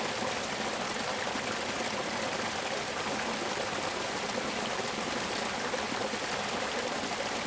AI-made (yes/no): no